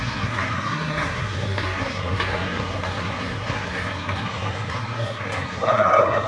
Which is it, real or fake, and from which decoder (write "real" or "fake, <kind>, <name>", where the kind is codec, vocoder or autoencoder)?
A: fake, codec, SNAC